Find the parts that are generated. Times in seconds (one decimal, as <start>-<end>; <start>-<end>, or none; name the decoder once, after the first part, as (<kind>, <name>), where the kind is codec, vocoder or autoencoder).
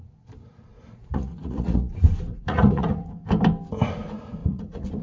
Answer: 0.7-1.9 (vocoder, Vocos); 2.3-3.1; 4.4-5.0